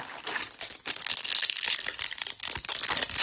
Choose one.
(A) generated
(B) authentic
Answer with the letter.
B